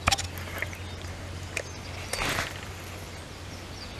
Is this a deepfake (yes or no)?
no